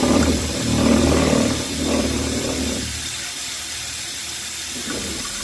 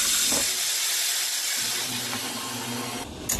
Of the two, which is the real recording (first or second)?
second